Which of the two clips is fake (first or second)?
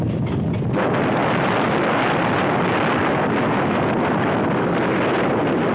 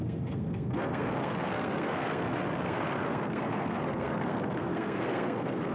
second